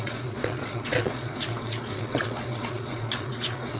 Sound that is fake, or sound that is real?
fake